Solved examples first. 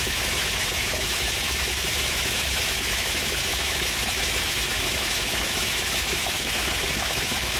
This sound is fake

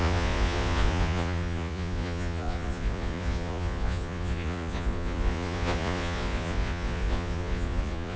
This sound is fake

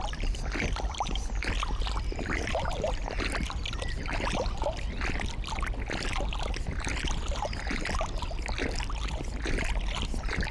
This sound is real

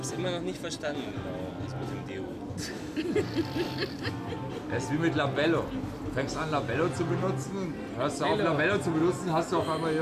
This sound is real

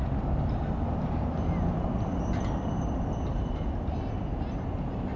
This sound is fake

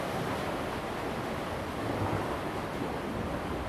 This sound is real